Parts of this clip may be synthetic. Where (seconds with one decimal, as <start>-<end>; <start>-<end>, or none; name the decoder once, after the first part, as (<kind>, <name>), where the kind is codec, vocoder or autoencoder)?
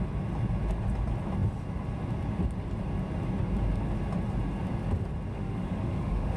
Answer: 5.3-6.4 (autoencoder, DAC-VAE)